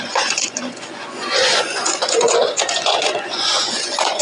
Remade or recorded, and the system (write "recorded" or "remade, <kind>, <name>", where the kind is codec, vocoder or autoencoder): remade, vocoder, Vocos